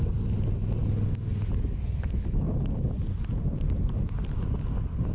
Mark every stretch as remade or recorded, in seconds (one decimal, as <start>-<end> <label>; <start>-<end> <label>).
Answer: 0.0-5.1 recorded